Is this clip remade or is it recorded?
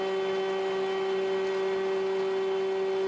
recorded